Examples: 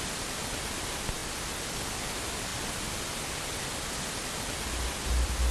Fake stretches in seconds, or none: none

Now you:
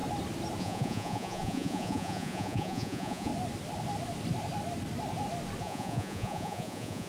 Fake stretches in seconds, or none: 0.6-3.3 (vocoder, Vocos); 5.6-7.1